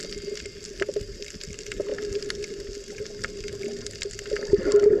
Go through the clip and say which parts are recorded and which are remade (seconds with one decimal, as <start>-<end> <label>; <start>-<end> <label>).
0.0-5.0 recorded